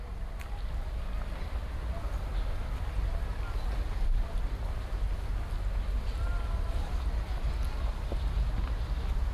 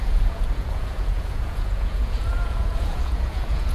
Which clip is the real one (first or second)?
first